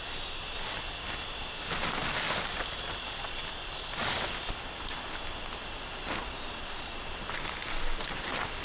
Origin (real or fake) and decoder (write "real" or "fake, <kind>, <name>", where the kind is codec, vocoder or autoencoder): real